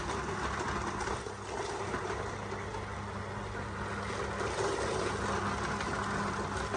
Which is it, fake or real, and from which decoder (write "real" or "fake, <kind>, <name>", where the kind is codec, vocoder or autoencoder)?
real